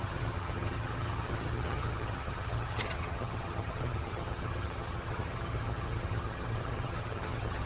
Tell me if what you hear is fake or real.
fake